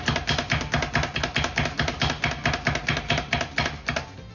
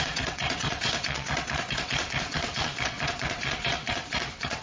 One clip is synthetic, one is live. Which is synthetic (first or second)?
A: second